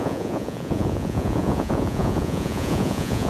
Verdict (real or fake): fake